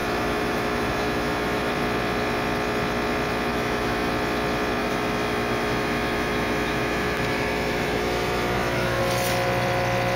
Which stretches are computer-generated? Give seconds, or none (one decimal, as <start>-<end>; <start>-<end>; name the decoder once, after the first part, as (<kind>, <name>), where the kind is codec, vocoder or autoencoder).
0.0-1.7 (autoencoder, DAC-VAE); 3.5-4.1; 4.8-9.0